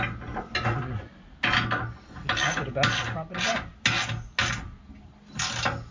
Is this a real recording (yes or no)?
yes